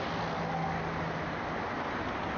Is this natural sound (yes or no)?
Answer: yes